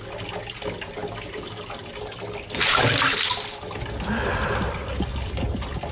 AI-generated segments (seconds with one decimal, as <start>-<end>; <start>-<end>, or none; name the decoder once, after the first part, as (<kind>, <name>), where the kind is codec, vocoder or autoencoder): none